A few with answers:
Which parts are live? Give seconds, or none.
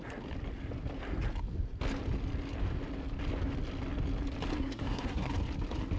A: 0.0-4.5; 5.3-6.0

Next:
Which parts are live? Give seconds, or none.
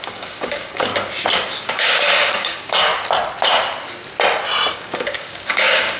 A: 0.9-1.6; 2.9-4.7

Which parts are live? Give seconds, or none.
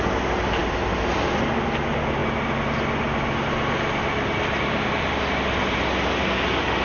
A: 0.0-6.8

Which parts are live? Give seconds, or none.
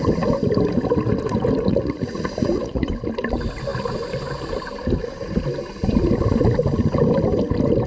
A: 0.0-1.7; 2.9-7.9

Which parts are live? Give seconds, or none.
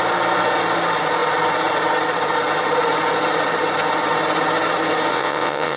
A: 0.0-5.1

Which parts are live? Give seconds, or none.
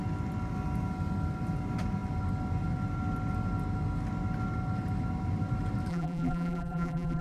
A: 0.0-5.9